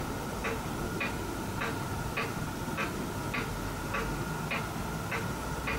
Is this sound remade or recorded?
recorded